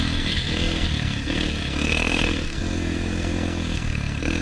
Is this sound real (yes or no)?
no